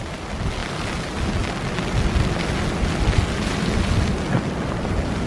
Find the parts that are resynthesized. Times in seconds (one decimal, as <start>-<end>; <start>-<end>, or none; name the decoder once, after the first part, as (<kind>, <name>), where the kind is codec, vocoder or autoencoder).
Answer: none